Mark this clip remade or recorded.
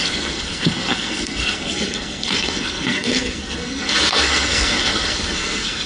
remade